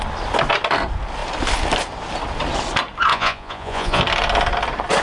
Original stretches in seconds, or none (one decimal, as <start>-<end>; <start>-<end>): 0.0-3.1; 4.0-5.0